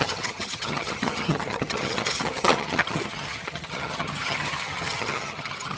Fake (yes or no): yes